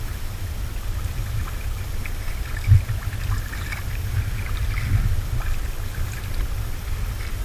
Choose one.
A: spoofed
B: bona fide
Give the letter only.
B